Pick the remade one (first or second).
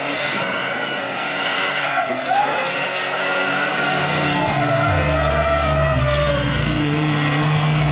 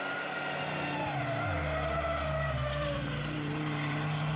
first